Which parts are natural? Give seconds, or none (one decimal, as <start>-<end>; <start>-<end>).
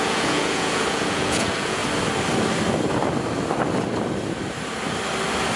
1.8-5.6